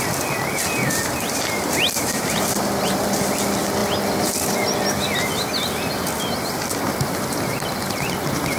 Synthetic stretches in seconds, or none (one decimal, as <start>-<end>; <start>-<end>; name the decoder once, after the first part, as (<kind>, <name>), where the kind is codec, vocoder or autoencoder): 1.0-3.0 (vocoder, BigVGAN v2)